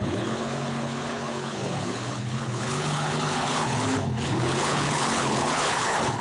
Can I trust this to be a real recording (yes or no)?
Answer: no